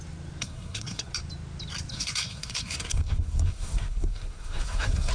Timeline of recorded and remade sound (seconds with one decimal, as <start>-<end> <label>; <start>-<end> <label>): 0.0-0.4 recorded; 0.4-1.1 remade; 1.1-1.9 recorded; 1.9-5.1 remade